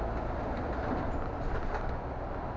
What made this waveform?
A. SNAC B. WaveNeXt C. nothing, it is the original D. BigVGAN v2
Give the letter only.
C